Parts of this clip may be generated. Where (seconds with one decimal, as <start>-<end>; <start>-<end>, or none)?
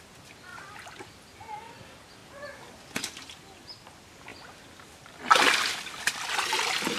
none